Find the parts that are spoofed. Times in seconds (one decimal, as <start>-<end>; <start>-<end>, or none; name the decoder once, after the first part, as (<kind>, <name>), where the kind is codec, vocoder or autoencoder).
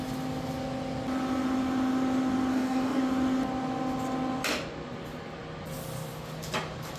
2.5-3.0 (codec, DAC)